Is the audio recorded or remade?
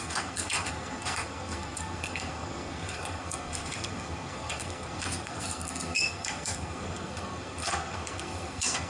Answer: remade